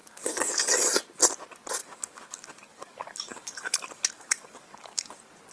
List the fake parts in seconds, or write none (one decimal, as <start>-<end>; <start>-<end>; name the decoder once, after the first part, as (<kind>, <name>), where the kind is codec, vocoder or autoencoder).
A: 0.0-0.6 (codec, DAC); 1.8-5.1